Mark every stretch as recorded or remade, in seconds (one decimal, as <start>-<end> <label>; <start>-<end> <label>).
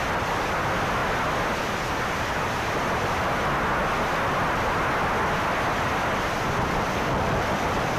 0.0-8.0 recorded